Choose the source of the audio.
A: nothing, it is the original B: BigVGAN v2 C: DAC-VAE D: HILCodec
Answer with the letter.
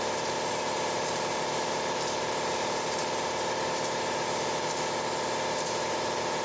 B